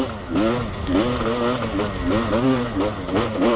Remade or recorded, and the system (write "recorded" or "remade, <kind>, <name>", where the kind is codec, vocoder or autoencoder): recorded